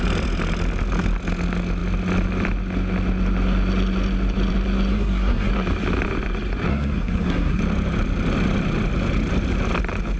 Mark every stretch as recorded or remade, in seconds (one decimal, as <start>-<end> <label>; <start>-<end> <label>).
0.0-4.9 recorded; 4.9-5.5 remade; 5.5-6.7 recorded; 6.7-7.6 remade; 7.6-10.2 recorded